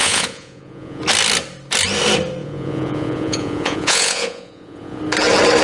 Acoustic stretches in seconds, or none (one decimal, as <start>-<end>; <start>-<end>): 1.0-2.4; 5.0-5.6